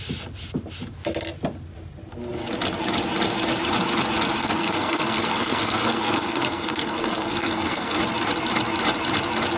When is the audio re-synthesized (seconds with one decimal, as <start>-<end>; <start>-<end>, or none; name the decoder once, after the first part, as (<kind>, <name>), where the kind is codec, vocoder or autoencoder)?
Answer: 4.4-8.0 (codec, SNAC)